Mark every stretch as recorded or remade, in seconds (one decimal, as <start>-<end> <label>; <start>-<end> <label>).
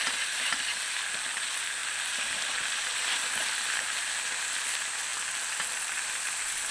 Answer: 0.0-6.7 recorded